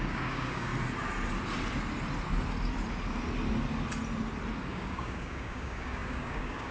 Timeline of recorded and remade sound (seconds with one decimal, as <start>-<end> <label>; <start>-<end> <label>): 0.0-0.7 remade; 0.7-4.7 recorded; 4.7-6.7 remade